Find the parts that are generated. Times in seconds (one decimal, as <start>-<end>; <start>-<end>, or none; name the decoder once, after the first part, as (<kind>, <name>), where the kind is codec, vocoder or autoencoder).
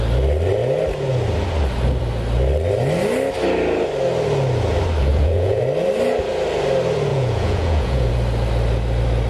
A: 5.1-5.6 (vocoder, Vocos); 7.1-8.1